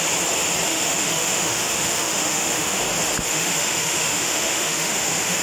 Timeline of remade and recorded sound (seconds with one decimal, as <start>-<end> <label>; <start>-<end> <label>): 0.0-0.7 recorded; 0.7-2.8 remade; 2.8-3.3 recorded; 3.3-5.4 remade